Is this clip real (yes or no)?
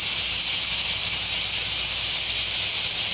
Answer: yes